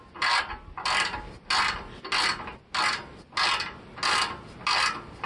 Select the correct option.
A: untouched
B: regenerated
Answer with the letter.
A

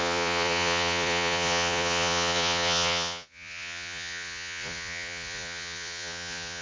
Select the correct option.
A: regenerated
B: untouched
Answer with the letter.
A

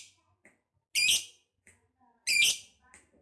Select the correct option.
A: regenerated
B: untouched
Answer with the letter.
B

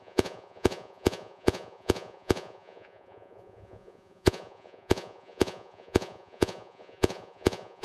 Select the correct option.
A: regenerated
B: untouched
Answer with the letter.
A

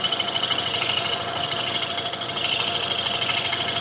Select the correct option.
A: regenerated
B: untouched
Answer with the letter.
A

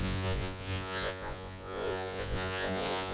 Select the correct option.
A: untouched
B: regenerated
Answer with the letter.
B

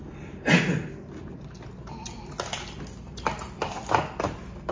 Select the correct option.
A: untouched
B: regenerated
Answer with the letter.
A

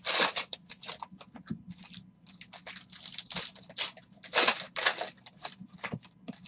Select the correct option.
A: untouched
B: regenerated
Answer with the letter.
A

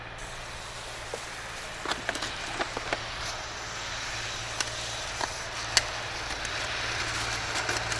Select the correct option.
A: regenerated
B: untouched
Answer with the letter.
B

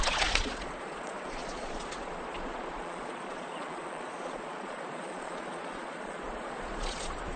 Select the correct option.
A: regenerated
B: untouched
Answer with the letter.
A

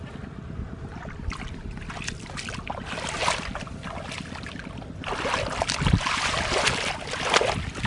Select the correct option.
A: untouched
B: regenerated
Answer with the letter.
A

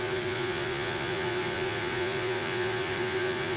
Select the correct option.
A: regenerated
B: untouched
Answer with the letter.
A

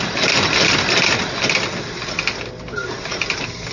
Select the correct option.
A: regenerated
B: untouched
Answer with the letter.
B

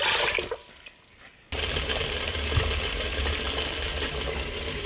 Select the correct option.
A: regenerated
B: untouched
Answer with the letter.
B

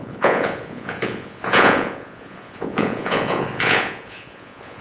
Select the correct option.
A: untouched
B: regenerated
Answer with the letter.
B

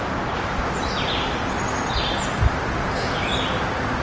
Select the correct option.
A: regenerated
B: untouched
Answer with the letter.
B